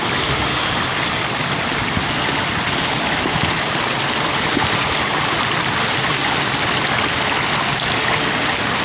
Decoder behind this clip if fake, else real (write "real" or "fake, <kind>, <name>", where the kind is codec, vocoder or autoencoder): real